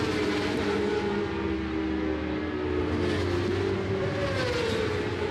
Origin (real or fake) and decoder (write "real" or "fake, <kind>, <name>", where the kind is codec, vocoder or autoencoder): real